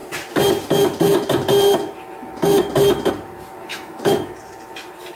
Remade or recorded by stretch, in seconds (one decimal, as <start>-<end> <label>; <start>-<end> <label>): 0.0-3.7 recorded; 3.7-4.3 remade; 4.3-5.2 recorded

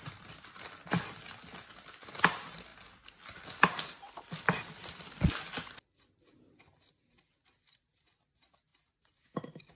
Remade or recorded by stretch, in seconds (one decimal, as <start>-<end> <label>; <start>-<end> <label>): 0.0-9.8 recorded

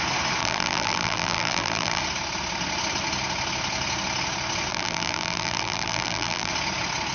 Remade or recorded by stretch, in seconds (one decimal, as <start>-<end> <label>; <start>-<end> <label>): 0.0-0.4 recorded; 0.4-2.0 remade; 2.0-4.7 recorded; 4.7-6.5 remade; 6.5-7.1 recorded

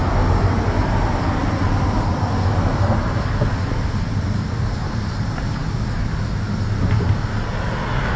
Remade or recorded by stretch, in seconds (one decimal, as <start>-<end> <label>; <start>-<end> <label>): 0.0-8.2 recorded

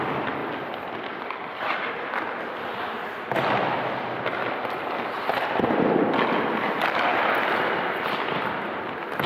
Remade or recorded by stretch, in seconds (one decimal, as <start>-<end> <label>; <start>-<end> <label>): 0.0-9.3 recorded

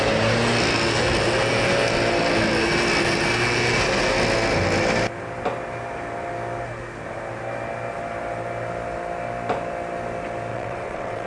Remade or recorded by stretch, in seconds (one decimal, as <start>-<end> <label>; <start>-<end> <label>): 0.0-10.5 recorded; 10.5-11.3 remade

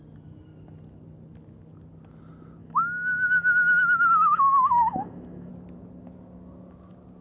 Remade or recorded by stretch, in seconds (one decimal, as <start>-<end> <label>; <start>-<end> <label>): 0.0-2.6 recorded; 2.6-5.5 remade; 5.5-7.2 recorded

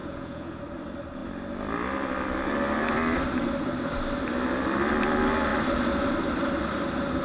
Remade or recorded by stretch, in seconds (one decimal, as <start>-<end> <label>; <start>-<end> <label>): 0.0-0.6 remade; 0.6-7.2 recorded